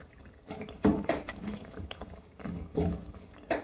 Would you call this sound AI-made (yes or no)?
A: yes